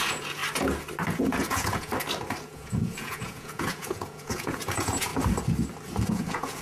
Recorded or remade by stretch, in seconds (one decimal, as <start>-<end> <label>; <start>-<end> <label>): 0.0-0.4 remade; 0.4-1.1 recorded; 1.1-1.9 remade; 1.9-2.5 recorded; 2.5-5.1 remade; 5.1-6.1 recorded; 6.1-6.6 remade